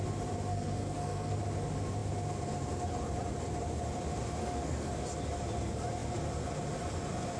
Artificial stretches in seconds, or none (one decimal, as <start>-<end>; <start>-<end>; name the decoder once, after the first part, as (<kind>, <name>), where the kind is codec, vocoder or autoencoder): 0.5-1.4 (codec, SNAC); 4.4-5.0